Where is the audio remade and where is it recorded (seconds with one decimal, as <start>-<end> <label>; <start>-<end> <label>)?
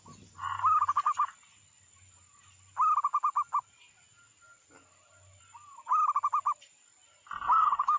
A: 0.0-8.0 recorded